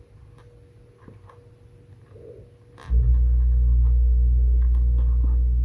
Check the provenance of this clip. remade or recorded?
recorded